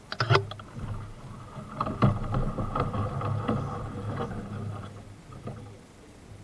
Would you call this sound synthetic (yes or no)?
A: no